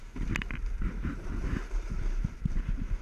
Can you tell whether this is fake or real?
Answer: real